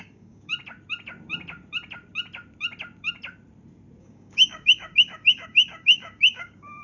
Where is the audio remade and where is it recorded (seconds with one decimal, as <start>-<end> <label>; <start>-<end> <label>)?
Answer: 0.0-0.5 remade; 0.5-4.0 recorded; 4.0-6.8 remade